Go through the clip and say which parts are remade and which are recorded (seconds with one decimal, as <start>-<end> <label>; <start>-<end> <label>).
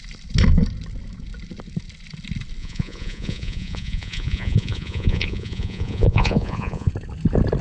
0.0-2.6 recorded; 2.6-6.9 remade; 6.9-7.6 recorded